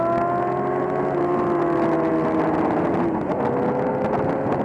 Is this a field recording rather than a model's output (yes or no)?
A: yes